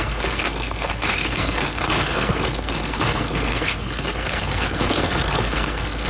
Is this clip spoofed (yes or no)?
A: yes